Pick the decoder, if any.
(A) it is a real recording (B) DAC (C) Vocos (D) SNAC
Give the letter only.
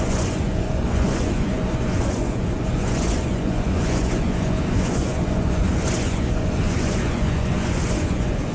C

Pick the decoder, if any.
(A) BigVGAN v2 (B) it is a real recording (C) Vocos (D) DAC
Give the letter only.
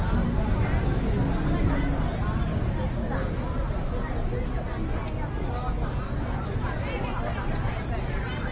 B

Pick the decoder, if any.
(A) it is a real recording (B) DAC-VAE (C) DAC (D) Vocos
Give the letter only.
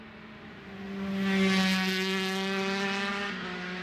A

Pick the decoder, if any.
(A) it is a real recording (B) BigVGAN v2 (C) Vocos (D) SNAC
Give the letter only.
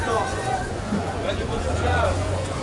C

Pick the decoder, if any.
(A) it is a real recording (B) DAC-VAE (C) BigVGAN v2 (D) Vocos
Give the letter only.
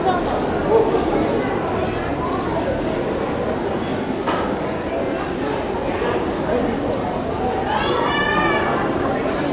A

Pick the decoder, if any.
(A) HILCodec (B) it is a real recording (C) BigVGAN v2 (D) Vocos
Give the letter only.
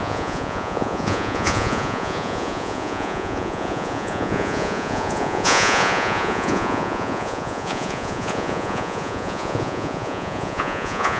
D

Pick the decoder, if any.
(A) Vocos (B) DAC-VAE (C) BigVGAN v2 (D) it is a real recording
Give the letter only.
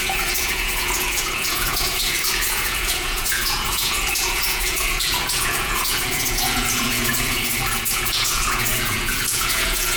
A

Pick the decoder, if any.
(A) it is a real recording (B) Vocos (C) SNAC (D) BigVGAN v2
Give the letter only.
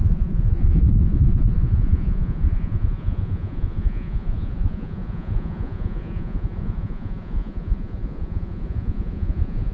B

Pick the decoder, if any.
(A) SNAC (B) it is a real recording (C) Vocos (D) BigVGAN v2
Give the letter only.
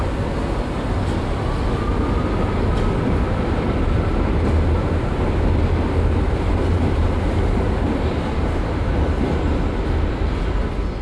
B